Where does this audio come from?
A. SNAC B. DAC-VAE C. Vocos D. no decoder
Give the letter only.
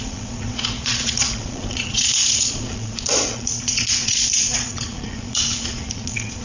C